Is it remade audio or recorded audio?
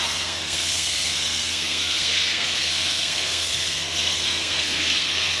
remade